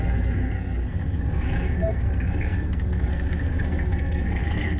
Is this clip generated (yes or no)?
yes